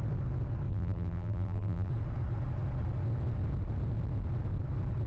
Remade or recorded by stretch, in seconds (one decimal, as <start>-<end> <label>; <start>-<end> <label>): 0.0-0.7 recorded; 0.7-1.9 remade; 1.9-5.1 recorded